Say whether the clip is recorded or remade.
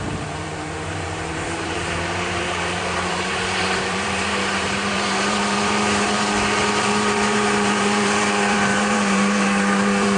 remade